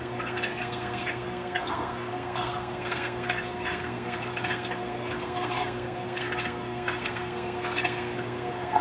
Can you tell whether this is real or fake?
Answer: fake